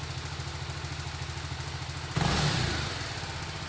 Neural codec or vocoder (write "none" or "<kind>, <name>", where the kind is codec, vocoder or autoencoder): none